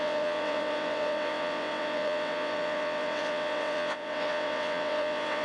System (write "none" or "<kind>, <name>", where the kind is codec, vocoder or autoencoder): vocoder, WaveNeXt